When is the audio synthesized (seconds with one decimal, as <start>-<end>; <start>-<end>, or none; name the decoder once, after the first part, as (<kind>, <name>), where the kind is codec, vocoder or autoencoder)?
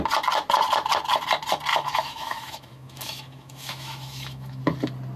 1.7-4.6 (autoencoder, DAC-VAE)